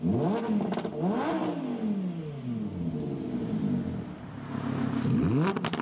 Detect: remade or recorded recorded